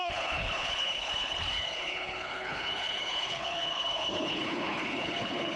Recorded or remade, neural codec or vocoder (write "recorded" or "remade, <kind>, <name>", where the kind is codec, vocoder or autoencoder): remade, codec, HILCodec